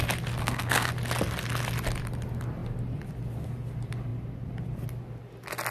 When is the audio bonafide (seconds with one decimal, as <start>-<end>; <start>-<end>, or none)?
0.0-0.4; 0.9-5.7